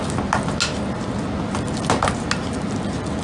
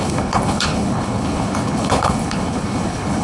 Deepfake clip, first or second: second